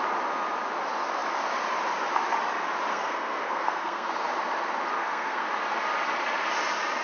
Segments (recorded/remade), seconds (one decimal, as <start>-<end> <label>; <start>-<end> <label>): 0.0-2.9 recorded; 2.9-4.1 remade; 4.1-5.0 recorded; 5.0-5.5 remade; 5.5-7.0 recorded